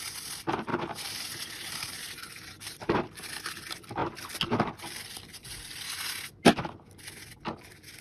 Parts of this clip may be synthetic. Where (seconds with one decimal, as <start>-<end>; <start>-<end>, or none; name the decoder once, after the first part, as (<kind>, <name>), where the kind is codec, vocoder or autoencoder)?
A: 0.7-3.5 (vocoder, BigVGAN v2)